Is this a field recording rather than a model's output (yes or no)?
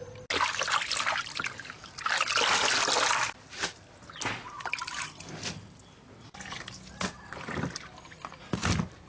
yes